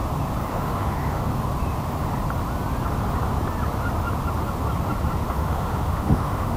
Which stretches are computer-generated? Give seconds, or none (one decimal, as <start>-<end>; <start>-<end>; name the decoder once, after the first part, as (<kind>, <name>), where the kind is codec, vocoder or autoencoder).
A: 0.5-1.3 (autoencoder, DAC-VAE); 5.3-6.6